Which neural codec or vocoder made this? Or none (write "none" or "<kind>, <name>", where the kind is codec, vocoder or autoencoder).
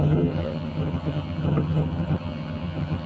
vocoder, HiFi-GAN